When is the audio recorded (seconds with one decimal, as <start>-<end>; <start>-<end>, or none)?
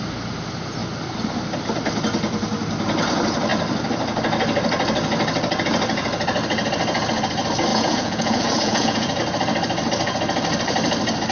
0.0-7.7; 9.2-11.3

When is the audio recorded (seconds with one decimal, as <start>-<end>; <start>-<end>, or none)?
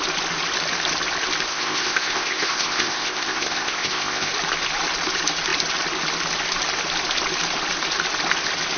0.0-1.5; 4.3-8.8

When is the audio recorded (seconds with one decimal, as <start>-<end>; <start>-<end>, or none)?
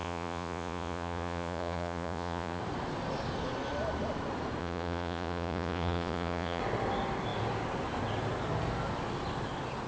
2.6-4.6; 6.6-9.9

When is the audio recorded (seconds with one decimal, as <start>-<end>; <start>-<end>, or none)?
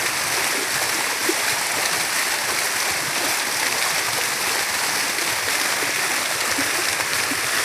0.0-7.6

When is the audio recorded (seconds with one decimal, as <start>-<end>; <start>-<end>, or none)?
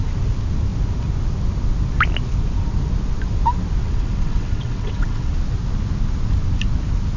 0.0-3.8; 5.3-7.2